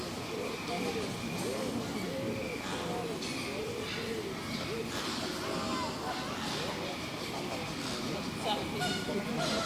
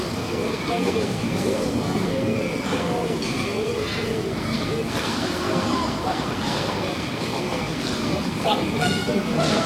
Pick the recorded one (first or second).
first